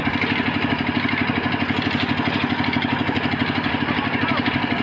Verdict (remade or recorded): recorded